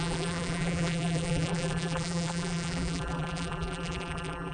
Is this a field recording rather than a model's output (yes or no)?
no